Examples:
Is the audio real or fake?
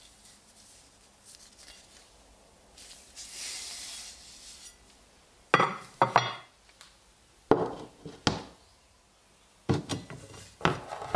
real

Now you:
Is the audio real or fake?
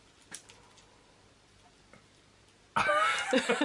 real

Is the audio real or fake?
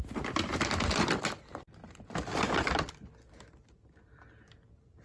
real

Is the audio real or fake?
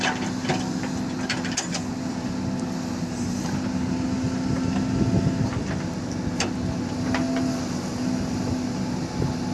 real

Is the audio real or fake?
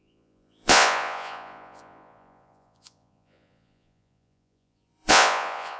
fake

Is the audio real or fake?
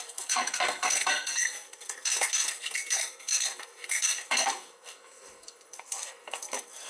fake